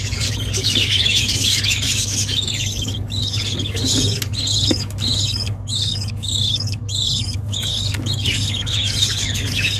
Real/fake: fake